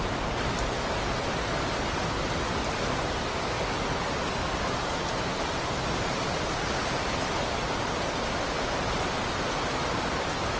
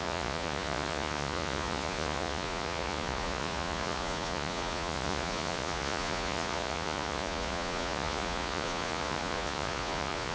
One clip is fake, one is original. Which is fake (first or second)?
second